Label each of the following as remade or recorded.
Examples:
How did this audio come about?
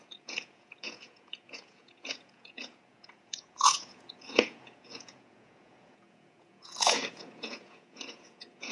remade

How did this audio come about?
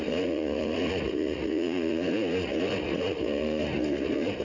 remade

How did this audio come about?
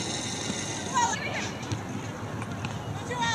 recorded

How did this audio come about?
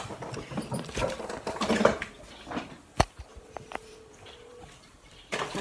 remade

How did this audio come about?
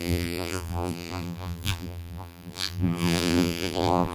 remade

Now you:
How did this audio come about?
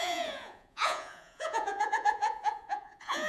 remade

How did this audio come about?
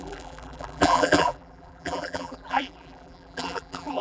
remade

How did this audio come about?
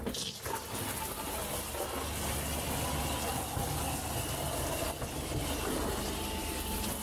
recorded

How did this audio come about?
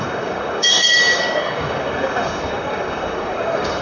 remade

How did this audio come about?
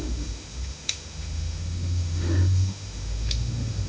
remade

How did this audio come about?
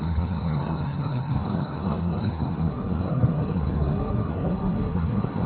remade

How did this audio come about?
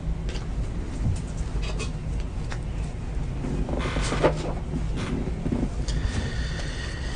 recorded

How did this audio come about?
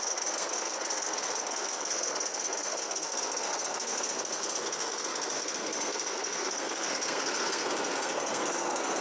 remade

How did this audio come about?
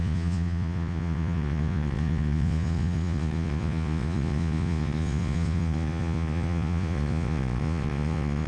remade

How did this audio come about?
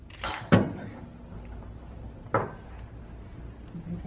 recorded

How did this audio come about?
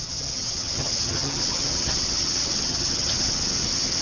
remade